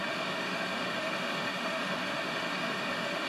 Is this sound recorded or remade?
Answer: remade